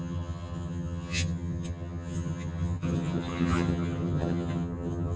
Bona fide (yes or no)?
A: no